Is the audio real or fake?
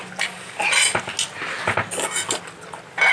real